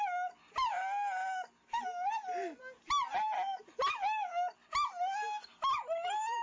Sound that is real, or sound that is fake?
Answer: real